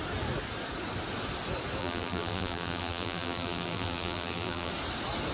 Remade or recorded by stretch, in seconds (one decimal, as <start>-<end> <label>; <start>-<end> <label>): 0.0-1.8 recorded; 1.8-4.7 remade; 4.7-5.3 recorded